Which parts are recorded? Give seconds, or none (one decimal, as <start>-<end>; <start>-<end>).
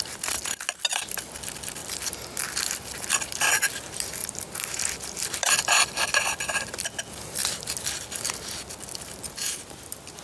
0.0-1.8; 3.5-4.2; 6.6-10.2